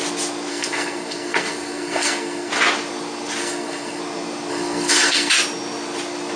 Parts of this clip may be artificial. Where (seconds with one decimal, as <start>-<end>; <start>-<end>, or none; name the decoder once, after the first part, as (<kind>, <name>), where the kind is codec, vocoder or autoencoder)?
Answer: 0.5-2.5 (codec, SNAC); 3.4-4.0; 4.5-5.3